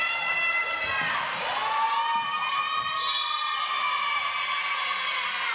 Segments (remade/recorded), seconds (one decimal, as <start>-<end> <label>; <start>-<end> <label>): 0.0-5.5 recorded